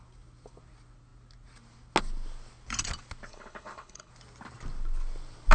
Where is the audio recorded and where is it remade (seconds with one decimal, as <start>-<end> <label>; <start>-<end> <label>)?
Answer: 0.0-3.3 recorded; 3.3-4.1 remade; 4.1-5.5 recorded